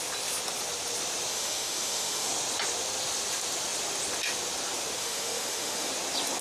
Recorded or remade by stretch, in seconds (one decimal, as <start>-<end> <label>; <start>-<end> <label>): 0.0-1.3 recorded; 1.3-2.3 remade; 2.3-5.0 recorded; 5.0-5.9 remade; 5.9-6.4 recorded